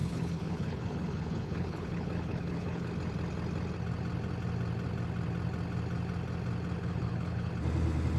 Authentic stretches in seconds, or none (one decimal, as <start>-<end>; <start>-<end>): 2.9-6.8; 7.5-8.2